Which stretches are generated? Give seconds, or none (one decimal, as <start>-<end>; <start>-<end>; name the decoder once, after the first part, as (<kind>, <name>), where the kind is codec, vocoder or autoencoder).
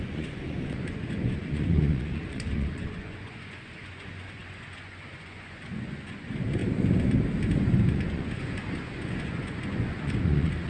0.0-6.6 (vocoder, Vocos); 7.9-10.7